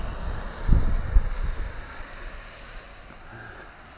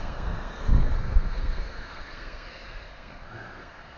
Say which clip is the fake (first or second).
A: second